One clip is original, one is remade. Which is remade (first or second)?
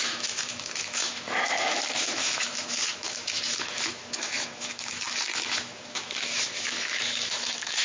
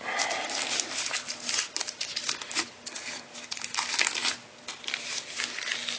first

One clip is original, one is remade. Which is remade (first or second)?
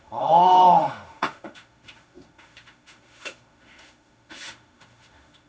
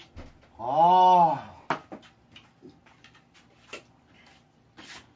first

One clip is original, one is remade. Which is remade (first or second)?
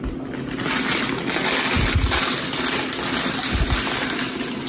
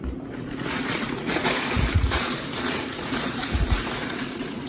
second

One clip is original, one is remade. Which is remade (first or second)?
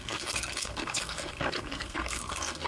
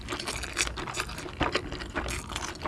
first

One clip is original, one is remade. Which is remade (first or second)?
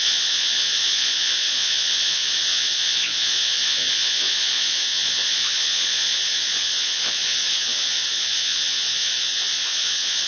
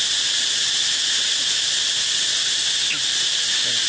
first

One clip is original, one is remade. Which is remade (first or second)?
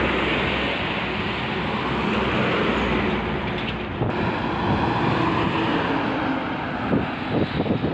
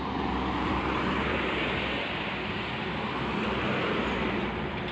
second